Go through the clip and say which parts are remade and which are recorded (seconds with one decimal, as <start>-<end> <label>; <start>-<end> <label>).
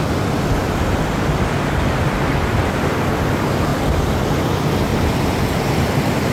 0.0-0.6 recorded; 0.6-2.0 remade; 2.0-4.9 recorded; 4.9-5.8 remade; 5.8-6.3 recorded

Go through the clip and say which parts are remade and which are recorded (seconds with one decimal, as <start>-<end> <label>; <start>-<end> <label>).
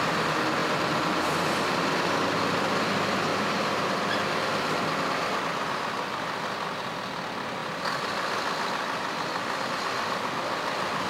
0.0-3.3 recorded; 3.3-4.0 remade; 4.0-11.1 recorded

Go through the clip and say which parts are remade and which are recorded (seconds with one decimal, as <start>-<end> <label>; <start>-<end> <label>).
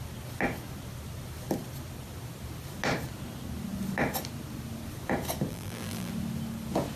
0.0-5.5 recorded; 5.5-6.1 remade; 6.1-7.0 recorded